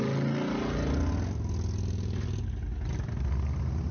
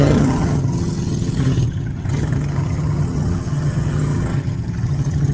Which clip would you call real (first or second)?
first